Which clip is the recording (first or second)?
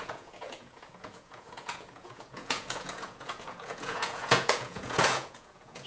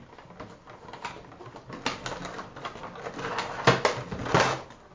second